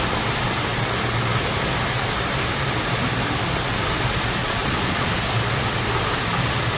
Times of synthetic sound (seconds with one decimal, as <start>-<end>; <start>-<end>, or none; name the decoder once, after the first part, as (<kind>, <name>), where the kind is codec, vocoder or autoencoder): 4.4-5.1 (vocoder, Vocos)